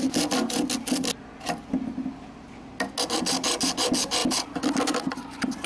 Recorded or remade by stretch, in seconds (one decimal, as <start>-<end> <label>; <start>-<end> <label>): 0.0-4.2 recorded; 4.2-4.8 remade; 4.8-5.7 recorded